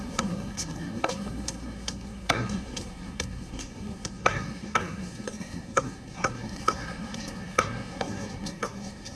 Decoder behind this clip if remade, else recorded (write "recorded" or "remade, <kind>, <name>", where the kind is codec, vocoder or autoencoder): remade, codec, SNAC